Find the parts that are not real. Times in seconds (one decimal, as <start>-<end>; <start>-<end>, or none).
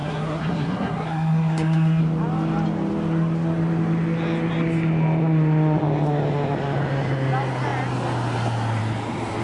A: 0.0-2.0